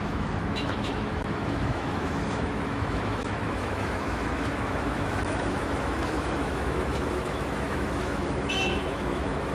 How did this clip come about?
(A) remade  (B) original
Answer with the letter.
A